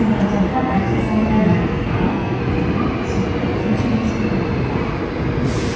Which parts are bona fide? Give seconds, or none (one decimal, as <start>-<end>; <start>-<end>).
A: 0.0-0.5; 2.4-3.6; 4.1-5.8